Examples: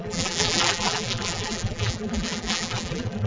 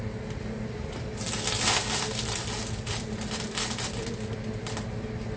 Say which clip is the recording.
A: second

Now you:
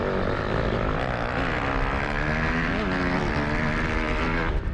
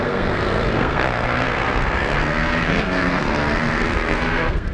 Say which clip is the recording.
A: first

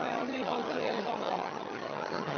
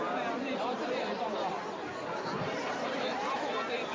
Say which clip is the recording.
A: second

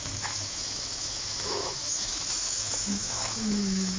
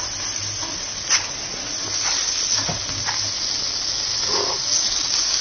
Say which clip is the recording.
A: second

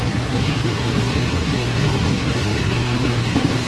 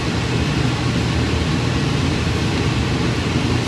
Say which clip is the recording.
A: second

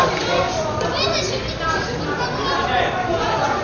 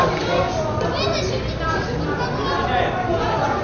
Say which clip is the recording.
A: second